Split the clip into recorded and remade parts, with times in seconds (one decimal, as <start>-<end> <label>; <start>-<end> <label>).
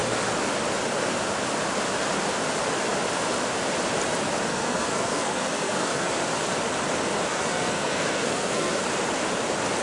0.0-4.5 recorded; 4.5-6.1 remade; 6.1-7.3 recorded; 7.3-8.8 remade; 8.8-9.8 recorded